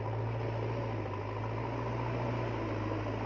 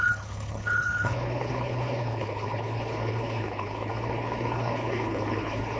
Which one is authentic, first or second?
first